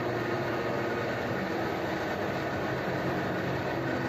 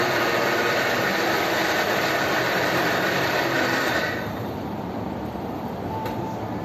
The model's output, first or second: second